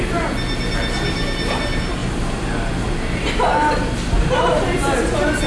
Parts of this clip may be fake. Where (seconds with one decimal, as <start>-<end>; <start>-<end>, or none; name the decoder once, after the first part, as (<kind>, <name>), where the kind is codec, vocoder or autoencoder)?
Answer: none

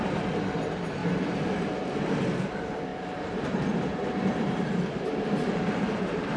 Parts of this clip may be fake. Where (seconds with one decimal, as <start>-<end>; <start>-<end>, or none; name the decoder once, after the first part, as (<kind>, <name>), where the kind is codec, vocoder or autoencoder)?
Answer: 1.0-1.7 (vocoder, BigVGAN v2); 2.9-3.5; 3.9-6.4

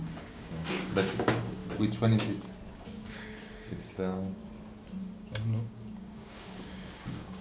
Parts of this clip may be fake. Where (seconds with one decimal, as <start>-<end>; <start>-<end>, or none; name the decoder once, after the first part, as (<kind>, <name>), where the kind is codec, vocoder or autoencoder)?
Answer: 0.0-1.6 (codec, DAC); 2.7-4.4; 5.0-7.4